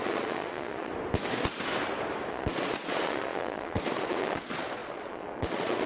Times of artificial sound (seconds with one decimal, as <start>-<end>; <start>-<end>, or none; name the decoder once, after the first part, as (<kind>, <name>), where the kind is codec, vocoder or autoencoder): 0.0-0.9 (vocoder, Vocos); 2.3-5.9